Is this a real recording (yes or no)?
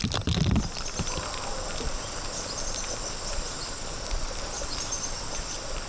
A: no